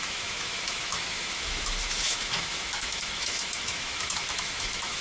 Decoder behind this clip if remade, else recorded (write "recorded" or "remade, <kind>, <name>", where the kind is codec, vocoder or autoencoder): remade, autoencoder, DAC-VAE